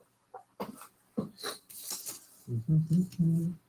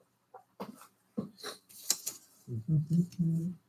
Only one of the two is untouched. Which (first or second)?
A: first